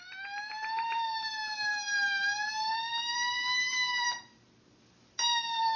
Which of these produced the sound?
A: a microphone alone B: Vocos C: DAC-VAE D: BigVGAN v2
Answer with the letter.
D